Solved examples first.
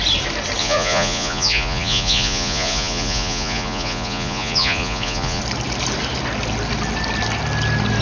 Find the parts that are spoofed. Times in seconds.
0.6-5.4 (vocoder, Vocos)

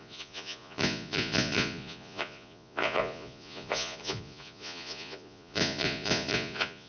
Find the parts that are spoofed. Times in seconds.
0.0-6.9 (vocoder, Vocos)

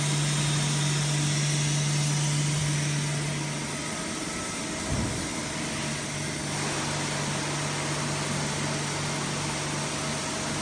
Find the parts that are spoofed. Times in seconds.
none